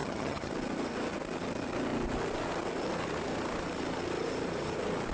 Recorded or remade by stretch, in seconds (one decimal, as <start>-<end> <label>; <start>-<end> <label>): 0.0-0.5 remade; 0.5-5.1 recorded